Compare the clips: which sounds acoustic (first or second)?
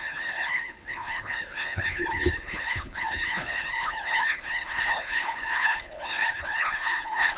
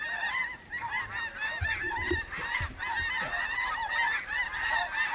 second